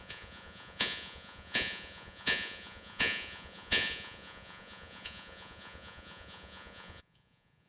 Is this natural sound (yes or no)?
no